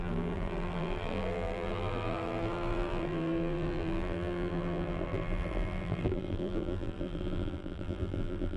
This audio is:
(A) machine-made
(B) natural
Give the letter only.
A